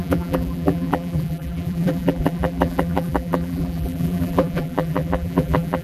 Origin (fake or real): fake